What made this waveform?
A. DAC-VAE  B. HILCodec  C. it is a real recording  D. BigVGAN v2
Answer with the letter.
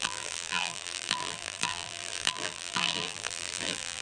D